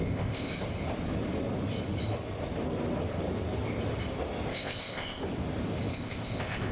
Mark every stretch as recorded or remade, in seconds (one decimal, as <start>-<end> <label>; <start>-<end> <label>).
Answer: 0.0-0.5 remade; 0.5-4.5 recorded; 4.5-5.2 remade; 5.2-5.9 recorded; 5.9-6.7 remade